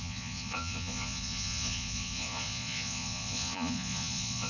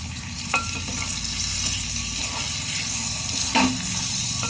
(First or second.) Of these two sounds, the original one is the second